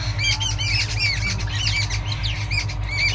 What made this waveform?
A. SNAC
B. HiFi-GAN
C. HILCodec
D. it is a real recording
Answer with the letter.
D